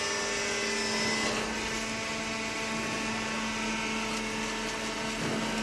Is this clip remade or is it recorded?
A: recorded